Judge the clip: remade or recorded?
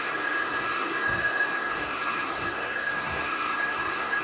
remade